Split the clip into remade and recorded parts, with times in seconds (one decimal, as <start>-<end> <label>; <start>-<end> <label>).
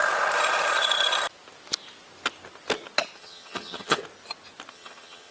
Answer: 0.0-3.2 recorded; 3.2-4.0 remade; 4.0-4.7 recorded; 4.7-5.3 remade